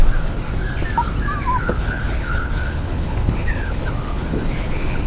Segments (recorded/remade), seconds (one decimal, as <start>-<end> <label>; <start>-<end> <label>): 0.0-0.5 remade; 0.5-1.6 recorded; 1.6-5.1 remade